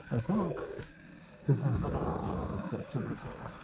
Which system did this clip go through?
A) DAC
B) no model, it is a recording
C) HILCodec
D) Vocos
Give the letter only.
A